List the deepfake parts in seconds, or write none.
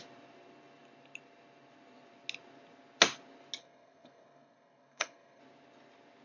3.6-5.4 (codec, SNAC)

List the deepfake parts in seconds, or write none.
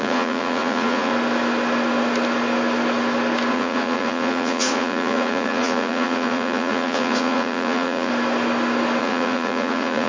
0.0-1.1 (vocoder, Vocos); 3.5-8.1; 9.0-10.1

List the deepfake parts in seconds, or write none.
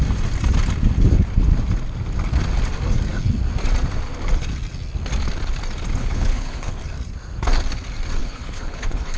6.0-6.8 (codec, HILCodec); 8.2-9.2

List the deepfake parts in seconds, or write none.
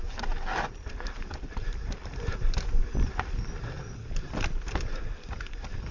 none